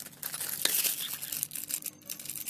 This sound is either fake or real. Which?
real